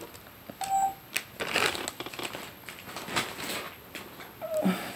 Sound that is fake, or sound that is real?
real